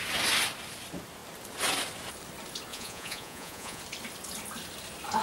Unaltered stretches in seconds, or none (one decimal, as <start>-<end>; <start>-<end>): 0.0-2.7; 3.8-5.2